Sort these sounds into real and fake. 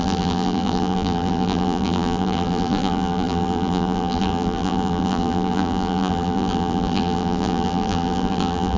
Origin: fake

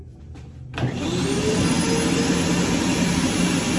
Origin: real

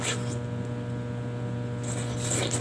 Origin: real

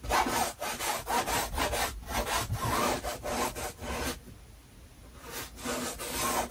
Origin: real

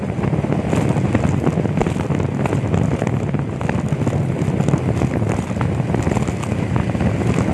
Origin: real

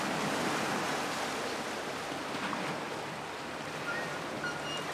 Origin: fake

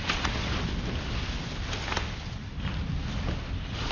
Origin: real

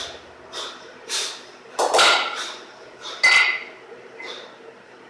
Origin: real